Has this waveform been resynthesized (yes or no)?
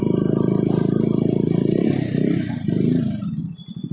no